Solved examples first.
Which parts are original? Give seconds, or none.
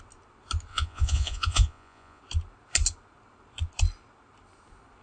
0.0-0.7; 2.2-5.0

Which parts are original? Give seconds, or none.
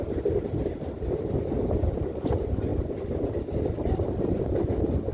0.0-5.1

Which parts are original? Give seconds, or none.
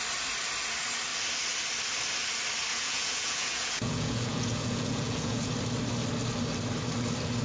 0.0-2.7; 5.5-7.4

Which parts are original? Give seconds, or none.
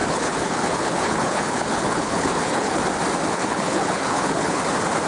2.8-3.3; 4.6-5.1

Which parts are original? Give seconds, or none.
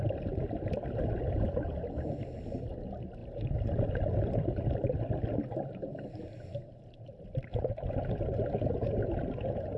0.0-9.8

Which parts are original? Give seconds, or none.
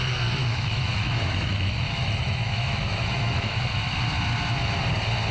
0.0-0.4; 3.6-5.3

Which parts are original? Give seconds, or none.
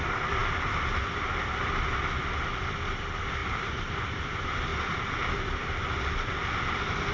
0.0-3.4; 4.1-7.1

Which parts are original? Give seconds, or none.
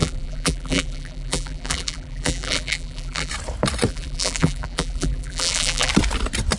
3.3-3.9; 5.9-6.6